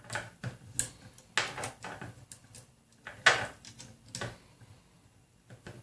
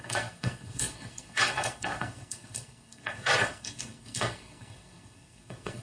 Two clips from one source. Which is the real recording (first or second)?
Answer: first